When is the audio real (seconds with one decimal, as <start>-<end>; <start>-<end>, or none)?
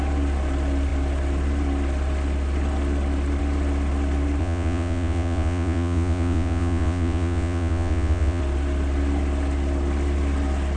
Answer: 0.0-4.4; 8.4-10.8